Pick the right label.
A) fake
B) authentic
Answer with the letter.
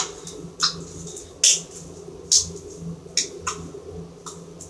B